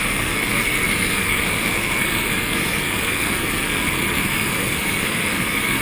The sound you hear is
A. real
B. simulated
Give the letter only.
B